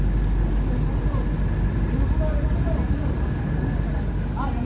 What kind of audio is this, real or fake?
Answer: real